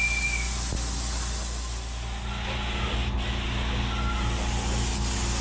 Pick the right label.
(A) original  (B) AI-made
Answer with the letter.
A